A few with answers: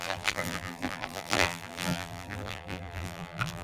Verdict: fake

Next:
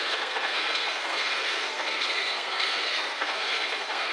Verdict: fake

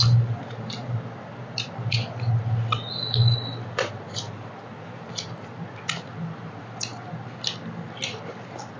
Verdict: real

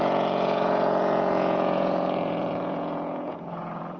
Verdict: fake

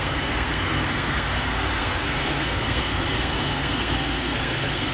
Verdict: fake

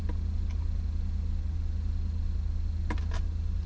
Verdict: real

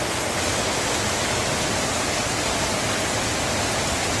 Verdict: real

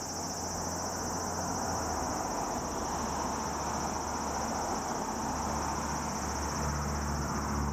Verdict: real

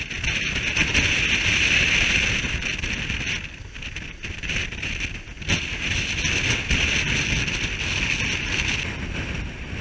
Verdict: real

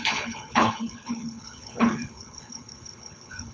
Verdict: fake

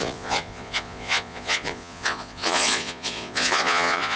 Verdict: fake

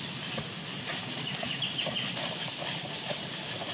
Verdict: real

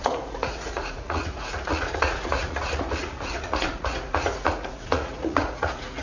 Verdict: fake